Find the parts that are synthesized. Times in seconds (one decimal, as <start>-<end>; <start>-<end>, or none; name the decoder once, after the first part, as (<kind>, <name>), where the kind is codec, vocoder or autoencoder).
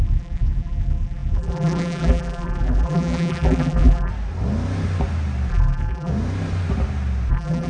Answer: 0.0-4.1 (vocoder, BigVGAN v2); 5.5-6.1; 7.3-7.7